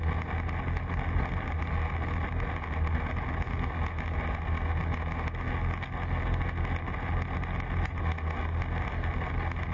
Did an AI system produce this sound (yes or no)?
no